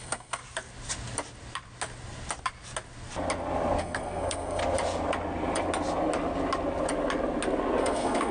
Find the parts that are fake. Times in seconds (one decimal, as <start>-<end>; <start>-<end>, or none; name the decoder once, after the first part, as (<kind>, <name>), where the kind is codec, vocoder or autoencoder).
0.0-0.4 (codec, SNAC); 3.8-4.6; 7.8-8.3